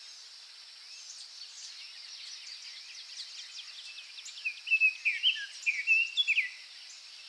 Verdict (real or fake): real